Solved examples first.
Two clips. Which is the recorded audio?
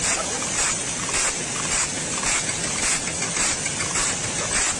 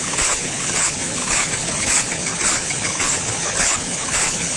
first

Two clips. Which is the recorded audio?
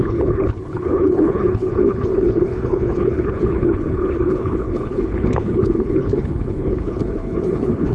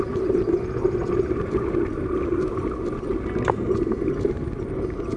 second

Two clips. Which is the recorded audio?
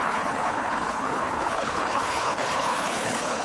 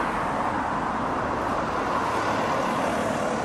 second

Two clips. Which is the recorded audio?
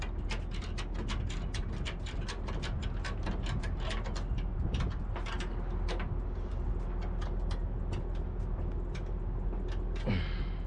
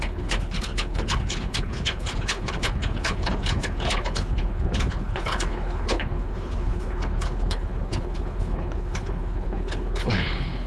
first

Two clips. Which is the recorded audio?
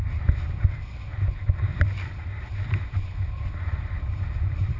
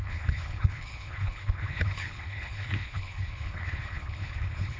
first